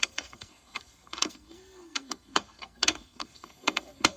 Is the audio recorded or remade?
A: remade